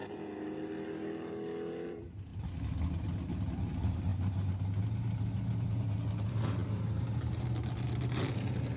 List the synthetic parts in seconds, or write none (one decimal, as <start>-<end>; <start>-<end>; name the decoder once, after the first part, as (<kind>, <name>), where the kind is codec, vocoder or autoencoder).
1.7-2.3 (vocoder, BigVGAN v2); 3.3-8.8

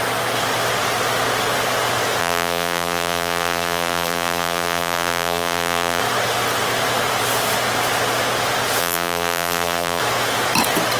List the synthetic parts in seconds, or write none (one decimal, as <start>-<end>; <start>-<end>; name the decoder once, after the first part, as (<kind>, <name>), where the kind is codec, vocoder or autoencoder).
2.2-6.0 (vocoder, BigVGAN v2); 8.8-10.0

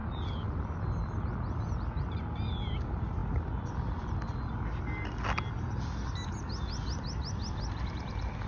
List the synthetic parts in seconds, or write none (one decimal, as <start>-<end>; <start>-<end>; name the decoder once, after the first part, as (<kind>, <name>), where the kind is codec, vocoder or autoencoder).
none

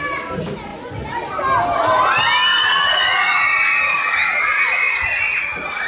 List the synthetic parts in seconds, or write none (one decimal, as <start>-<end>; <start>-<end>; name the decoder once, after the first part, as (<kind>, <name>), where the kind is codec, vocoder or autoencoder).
2.5-5.9 (vocoder, Vocos)

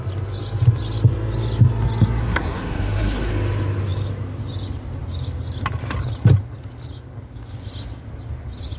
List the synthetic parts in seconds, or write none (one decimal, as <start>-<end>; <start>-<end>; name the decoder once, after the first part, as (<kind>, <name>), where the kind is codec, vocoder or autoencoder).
2.2-3.3 (codec, SNAC)

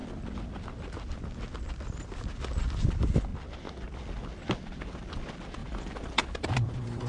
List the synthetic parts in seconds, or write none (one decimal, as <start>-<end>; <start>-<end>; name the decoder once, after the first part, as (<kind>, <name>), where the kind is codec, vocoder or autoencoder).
5.6-7.1 (vocoder, BigVGAN v2)